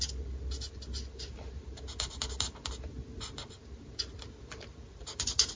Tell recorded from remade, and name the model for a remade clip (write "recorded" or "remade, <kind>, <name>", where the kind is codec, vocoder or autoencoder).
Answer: recorded